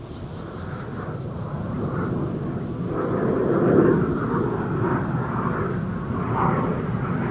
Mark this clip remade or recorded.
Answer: recorded